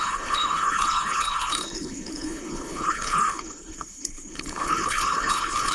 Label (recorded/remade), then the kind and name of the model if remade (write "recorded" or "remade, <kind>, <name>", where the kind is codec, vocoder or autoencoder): remade, codec, HILCodec